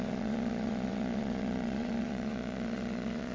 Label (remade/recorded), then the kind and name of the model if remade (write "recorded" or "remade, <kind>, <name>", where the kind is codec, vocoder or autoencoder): remade, vocoder, Vocos